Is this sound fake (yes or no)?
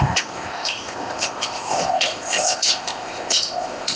yes